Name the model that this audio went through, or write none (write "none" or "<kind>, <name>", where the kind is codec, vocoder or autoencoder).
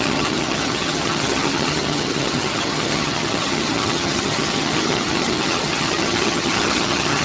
vocoder, HiFi-GAN